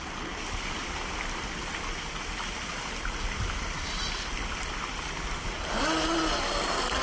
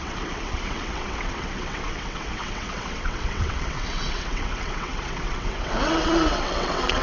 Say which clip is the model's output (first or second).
second